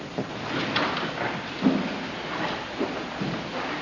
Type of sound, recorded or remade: recorded